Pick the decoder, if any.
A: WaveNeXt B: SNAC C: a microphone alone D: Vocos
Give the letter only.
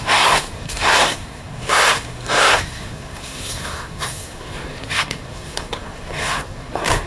B